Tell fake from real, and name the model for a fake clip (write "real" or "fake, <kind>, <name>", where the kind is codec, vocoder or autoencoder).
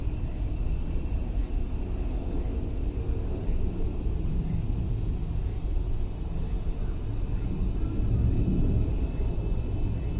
real